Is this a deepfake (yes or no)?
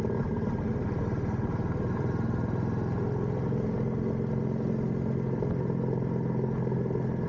no